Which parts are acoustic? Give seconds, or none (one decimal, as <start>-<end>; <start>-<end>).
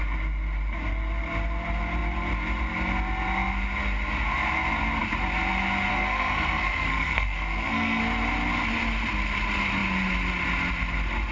0.0-5.9; 8.0-11.3